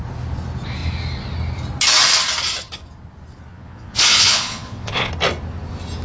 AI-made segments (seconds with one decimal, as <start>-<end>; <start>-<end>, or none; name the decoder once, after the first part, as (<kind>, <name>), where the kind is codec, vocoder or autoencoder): 3.5-5.1 (vocoder, Vocos)